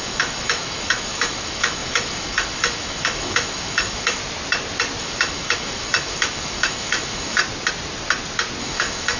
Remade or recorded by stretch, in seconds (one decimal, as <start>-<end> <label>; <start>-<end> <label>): 0.0-4.2 remade; 4.2-5.0 recorded; 5.0-7.4 remade; 7.4-8.6 recorded; 8.6-9.2 remade